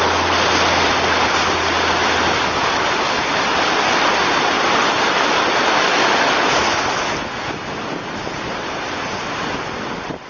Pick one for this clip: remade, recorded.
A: recorded